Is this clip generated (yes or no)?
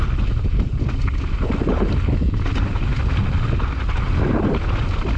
no